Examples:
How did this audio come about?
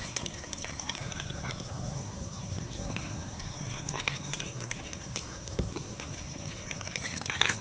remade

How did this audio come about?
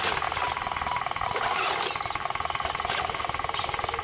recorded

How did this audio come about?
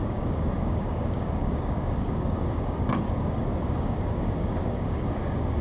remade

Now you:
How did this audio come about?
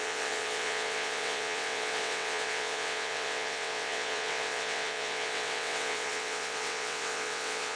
remade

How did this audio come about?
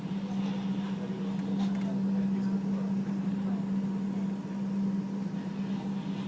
recorded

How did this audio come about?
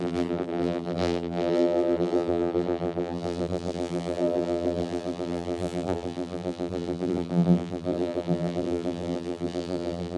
remade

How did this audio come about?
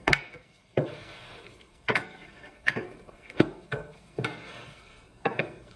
remade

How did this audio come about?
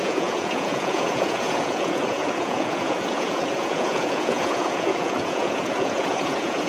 remade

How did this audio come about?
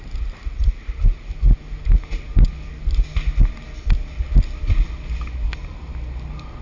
recorded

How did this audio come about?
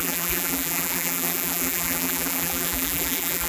remade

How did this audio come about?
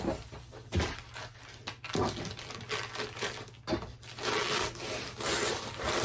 recorded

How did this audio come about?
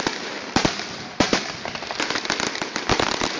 remade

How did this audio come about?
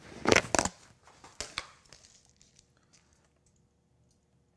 recorded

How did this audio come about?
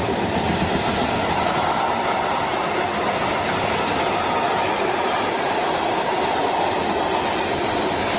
recorded